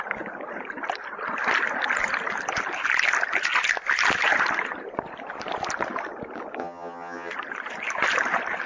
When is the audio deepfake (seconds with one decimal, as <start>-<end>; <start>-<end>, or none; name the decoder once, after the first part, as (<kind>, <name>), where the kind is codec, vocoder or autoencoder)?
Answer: 6.6-7.3 (vocoder, HiFi-GAN)